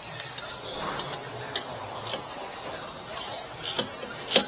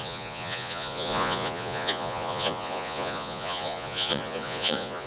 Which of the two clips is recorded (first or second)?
first